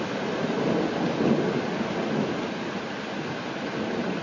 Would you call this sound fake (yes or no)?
no